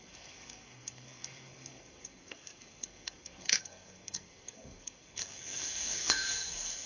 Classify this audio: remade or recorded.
remade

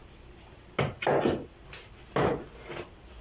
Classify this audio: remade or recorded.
recorded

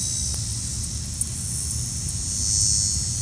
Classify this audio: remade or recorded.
recorded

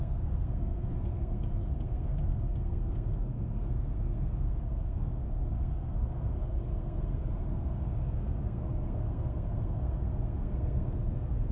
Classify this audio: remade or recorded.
remade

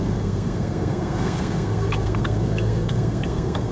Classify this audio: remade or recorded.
remade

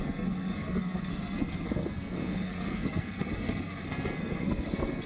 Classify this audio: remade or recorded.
remade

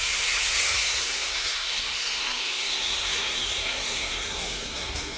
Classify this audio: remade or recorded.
remade